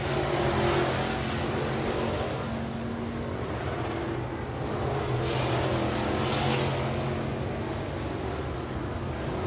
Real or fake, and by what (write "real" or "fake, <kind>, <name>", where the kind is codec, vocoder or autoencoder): real